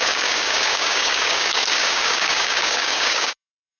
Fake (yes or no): yes